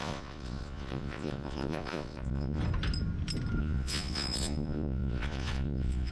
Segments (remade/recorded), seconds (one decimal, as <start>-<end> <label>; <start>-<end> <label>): 0.0-2.6 remade; 2.6-3.6 recorded; 3.6-6.1 remade